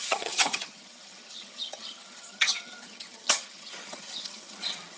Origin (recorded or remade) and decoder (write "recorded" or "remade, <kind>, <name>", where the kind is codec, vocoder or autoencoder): remade, vocoder, HiFi-GAN